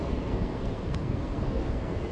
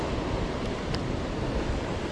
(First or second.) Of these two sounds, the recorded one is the second